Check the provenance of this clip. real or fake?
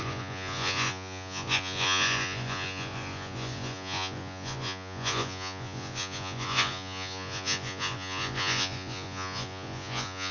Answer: fake